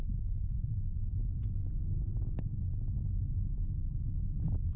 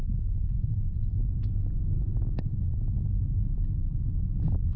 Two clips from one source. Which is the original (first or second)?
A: first